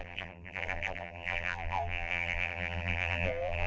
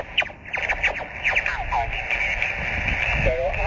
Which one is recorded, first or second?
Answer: second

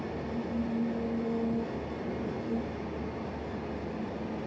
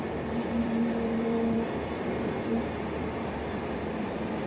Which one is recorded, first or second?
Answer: first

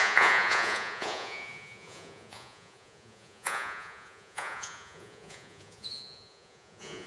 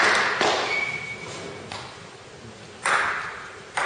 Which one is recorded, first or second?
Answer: second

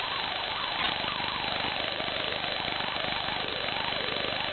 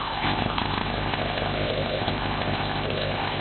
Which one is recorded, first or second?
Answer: first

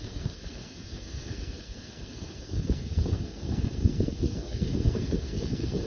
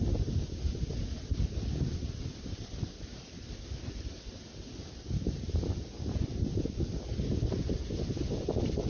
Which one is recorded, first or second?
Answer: second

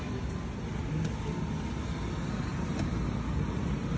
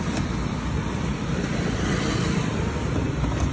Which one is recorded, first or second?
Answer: first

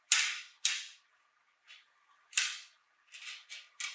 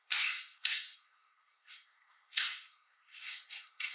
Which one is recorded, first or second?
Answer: first